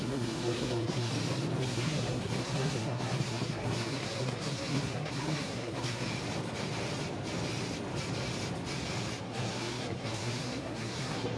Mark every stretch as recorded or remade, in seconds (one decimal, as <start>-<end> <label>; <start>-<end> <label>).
0.0-1.1 remade; 1.1-1.6 recorded; 1.6-6.1 remade; 6.1-9.2 recorded; 9.2-11.4 remade